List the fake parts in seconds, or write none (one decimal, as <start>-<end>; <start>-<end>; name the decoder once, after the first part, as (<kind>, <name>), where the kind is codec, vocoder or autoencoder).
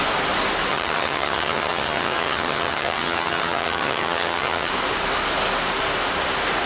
0.7-4.7 (vocoder, HiFi-GAN)